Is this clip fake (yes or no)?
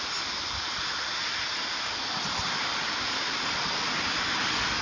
no